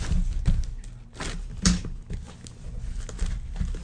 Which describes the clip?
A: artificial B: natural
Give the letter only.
B